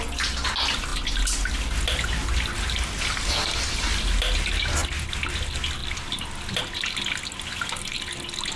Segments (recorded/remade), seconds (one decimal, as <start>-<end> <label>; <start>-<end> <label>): 0.0-8.6 recorded